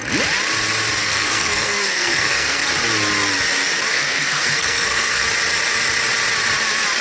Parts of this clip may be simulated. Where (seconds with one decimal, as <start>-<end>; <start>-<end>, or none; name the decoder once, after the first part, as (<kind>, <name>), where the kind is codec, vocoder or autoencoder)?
1.0-2.7 (codec, SNAC); 3.9-5.2